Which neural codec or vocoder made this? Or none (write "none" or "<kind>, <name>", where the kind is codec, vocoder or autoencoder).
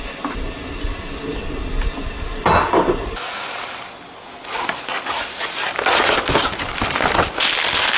none